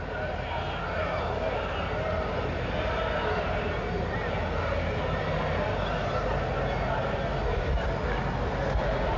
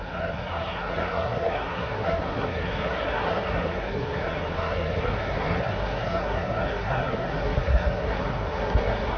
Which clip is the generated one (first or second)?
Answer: second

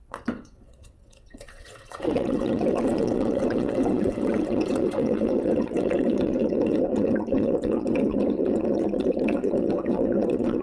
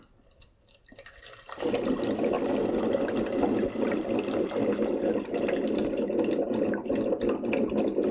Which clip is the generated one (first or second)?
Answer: first